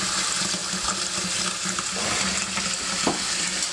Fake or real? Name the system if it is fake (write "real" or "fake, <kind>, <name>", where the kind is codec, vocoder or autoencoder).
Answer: real